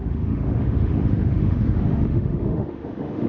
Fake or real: fake